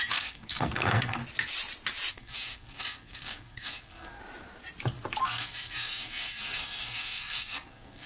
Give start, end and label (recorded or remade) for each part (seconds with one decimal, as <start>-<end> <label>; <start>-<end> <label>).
0.0-1.2 remade; 1.2-2.1 recorded; 2.1-4.2 remade; 4.2-5.2 recorded; 5.2-8.1 remade